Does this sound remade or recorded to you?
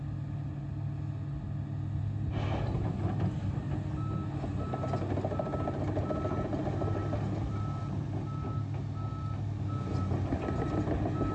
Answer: recorded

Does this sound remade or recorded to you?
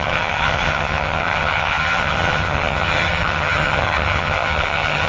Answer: remade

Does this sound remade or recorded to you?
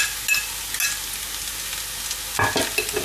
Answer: recorded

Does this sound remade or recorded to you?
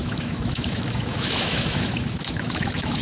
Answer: remade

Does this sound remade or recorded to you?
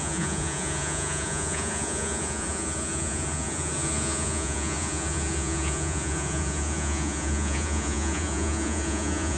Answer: remade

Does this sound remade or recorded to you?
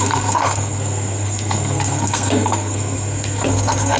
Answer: remade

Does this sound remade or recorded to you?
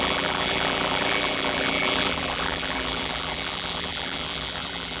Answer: remade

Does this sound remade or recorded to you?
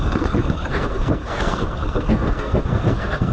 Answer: remade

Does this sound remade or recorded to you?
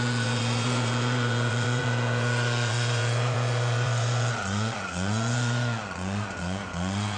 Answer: remade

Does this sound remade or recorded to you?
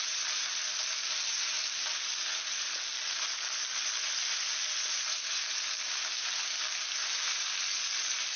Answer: recorded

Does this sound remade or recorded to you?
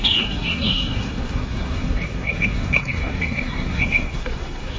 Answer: remade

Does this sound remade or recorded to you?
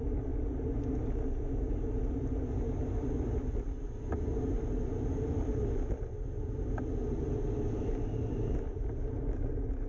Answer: recorded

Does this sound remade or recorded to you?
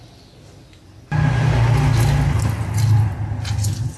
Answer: recorded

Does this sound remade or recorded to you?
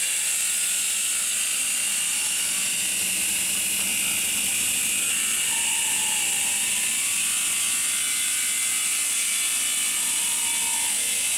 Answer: recorded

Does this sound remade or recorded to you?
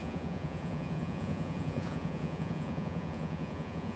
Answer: remade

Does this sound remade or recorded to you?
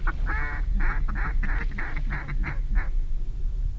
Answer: recorded